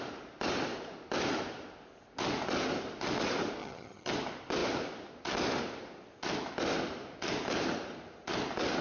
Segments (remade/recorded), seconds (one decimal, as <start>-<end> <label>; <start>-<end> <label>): 0.0-3.6 recorded; 3.6-4.1 remade; 4.1-8.8 recorded